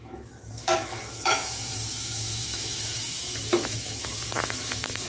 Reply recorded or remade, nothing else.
remade